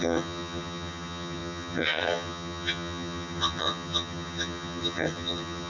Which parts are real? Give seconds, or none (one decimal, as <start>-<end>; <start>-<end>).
none